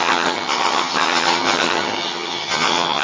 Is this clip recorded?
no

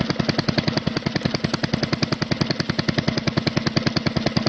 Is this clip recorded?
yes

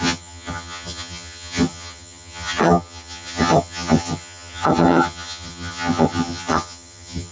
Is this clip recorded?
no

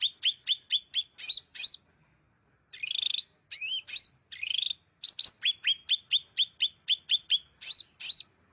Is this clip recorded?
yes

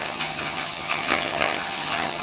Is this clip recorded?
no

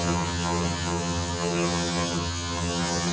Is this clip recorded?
no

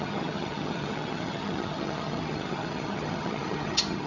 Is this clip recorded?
no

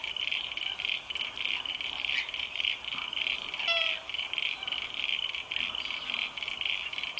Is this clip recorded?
yes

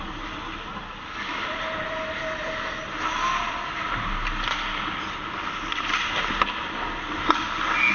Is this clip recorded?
yes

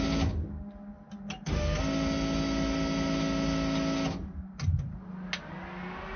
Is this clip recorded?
yes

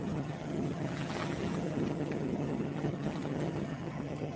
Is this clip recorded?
no